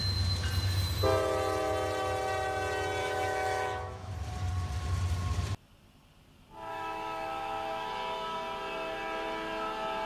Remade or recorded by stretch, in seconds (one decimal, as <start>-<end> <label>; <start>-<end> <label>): 0.0-3.0 recorded; 3.0-4.1 remade; 4.1-6.7 recorded; 6.7-7.9 remade; 7.9-10.1 recorded